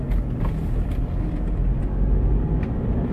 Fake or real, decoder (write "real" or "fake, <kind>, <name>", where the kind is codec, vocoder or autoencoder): real